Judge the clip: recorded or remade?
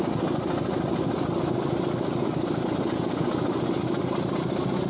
recorded